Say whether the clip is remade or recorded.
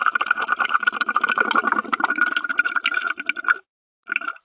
recorded